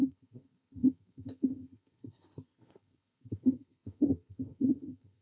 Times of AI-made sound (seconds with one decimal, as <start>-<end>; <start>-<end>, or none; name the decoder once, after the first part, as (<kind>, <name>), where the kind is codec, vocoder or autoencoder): 0.0-5.2 (codec, SNAC)